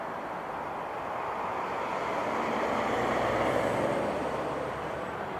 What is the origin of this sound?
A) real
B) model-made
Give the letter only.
A